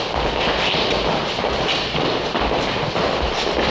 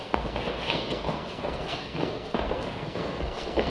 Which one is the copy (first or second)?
second